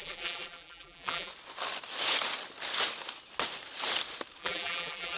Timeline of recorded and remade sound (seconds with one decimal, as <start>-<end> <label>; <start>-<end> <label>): 0.0-1.3 remade; 1.3-4.4 recorded; 4.4-5.2 remade